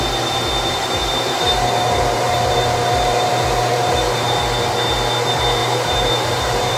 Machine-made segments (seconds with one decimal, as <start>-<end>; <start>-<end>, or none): 1.0-4.4; 5.6-6.8